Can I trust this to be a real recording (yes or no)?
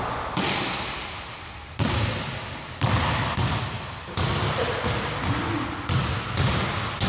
yes